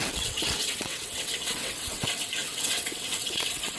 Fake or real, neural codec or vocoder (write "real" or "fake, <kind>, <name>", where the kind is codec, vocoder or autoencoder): fake, vocoder, WaveNeXt